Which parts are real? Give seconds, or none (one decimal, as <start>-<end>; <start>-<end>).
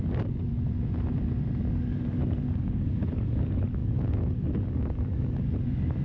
0.5-1.7